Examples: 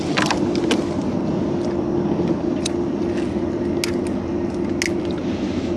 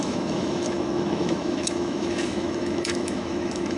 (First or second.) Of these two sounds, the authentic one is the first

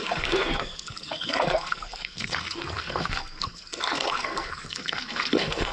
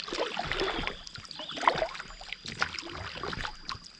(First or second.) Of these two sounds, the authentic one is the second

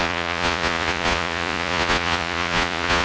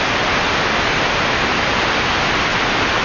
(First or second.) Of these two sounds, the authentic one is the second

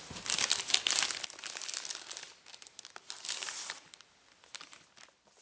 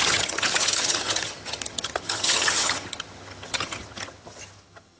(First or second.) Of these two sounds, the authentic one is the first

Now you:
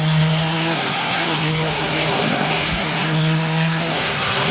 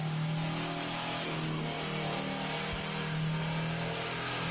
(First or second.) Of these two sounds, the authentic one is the second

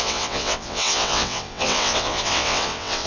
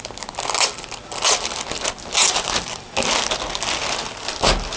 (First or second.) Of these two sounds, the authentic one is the second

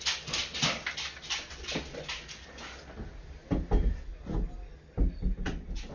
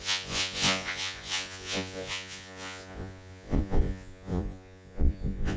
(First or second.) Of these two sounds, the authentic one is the first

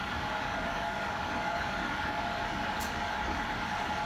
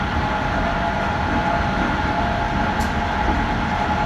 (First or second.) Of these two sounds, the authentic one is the second